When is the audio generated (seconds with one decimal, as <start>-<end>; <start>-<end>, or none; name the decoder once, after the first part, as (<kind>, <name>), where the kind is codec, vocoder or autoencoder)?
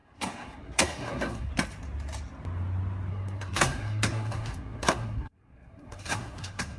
0.0-1.5 (codec, SNAC); 3.1-6.8